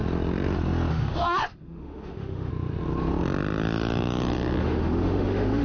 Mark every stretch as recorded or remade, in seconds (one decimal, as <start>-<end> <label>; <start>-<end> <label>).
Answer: 0.0-0.9 recorded; 0.9-2.5 remade; 2.5-4.6 recorded; 4.6-5.6 remade